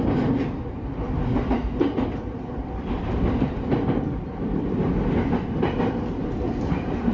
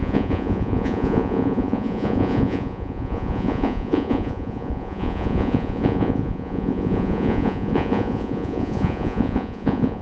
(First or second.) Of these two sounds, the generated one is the second